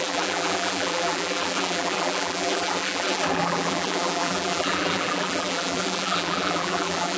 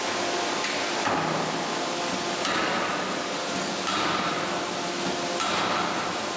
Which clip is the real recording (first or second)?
second